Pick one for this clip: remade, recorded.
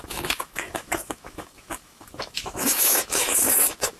remade